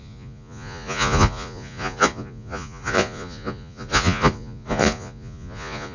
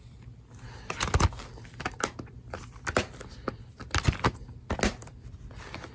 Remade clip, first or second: first